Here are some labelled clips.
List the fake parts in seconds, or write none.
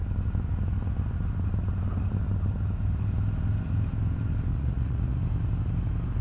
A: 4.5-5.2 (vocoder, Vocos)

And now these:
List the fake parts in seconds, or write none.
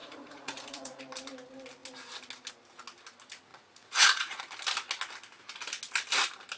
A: 0.0-1.0 (vocoder, Vocos); 3.5-4.4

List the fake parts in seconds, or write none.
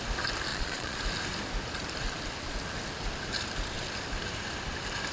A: 0.5-1.0 (vocoder, Vocos)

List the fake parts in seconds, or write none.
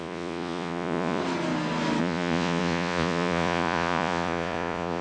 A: 0.0-1.2 (vocoder, Vocos); 2.0-5.0